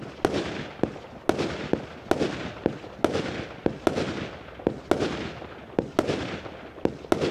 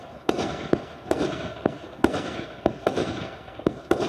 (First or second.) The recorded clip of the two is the first